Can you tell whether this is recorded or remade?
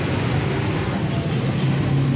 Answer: recorded